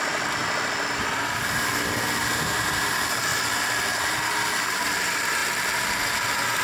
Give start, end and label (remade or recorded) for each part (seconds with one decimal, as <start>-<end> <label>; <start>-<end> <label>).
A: 0.0-6.6 recorded

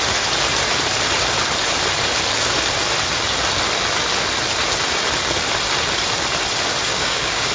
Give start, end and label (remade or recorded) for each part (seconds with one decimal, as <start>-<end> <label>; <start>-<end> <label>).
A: 0.0-6.9 recorded; 6.9-7.5 remade

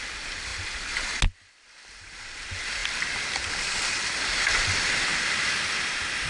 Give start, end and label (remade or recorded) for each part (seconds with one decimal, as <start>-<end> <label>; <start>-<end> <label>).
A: 0.0-6.3 recorded

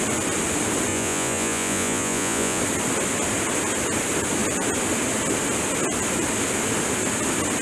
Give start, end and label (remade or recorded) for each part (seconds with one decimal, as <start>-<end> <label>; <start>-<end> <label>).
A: 0.0-0.9 recorded; 0.9-2.6 remade; 2.6-7.6 recorded

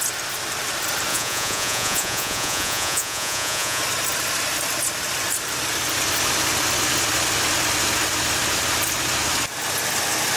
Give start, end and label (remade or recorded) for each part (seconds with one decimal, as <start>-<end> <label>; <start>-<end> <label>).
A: 0.0-1.1 recorded; 1.1-3.8 remade; 3.8-10.4 recorded

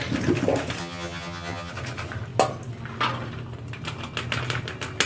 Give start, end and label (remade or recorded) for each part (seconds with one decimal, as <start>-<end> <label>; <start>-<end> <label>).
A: 0.0-0.8 recorded; 0.8-1.7 remade; 1.7-5.1 recorded